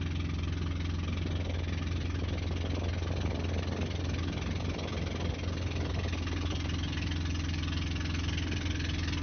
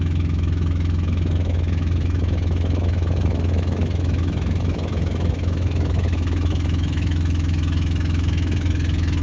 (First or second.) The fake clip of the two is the second